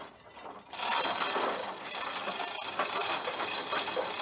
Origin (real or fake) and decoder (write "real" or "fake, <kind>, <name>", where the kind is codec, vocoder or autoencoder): real